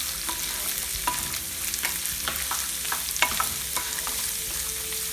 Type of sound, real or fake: real